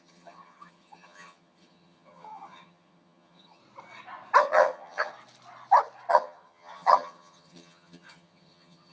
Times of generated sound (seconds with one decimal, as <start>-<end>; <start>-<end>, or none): 0.0-3.6; 4.4-5.1; 6.1-8.9